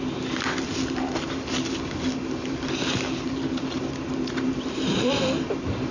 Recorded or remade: recorded